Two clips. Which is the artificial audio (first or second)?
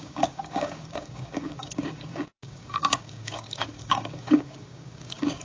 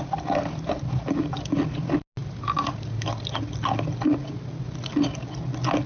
first